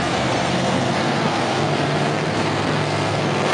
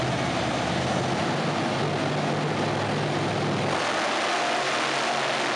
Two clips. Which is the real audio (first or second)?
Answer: second